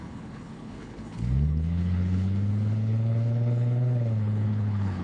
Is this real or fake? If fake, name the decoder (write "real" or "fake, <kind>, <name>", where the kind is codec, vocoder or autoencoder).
fake, codec, HILCodec